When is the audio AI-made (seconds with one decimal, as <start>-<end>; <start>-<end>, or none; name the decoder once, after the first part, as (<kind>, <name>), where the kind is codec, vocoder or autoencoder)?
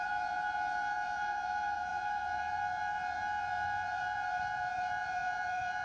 0.0-5.8 (vocoder, Vocos)